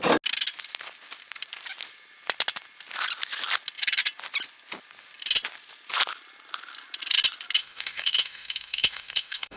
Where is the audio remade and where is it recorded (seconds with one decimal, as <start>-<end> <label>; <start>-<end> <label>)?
0.0-7.6 recorded; 7.6-9.6 remade